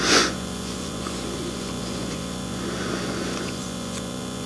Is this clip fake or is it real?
fake